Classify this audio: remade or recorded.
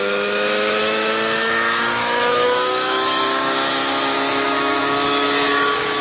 remade